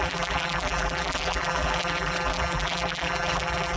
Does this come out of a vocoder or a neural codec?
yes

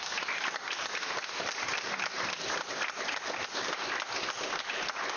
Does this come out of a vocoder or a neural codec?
no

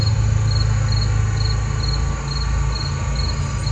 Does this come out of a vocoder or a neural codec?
no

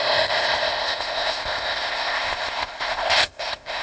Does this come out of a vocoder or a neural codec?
yes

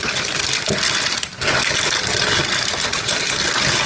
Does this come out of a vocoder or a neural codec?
no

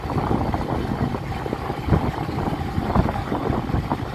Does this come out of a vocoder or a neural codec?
no